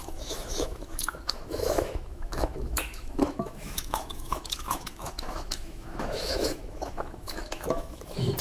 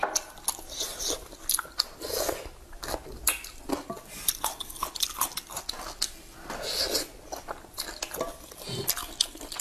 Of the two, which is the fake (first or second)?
first